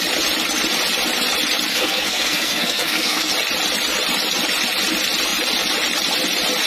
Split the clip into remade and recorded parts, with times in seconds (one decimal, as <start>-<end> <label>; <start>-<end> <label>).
0.0-1.7 recorded; 1.7-3.3 remade; 3.3-6.7 recorded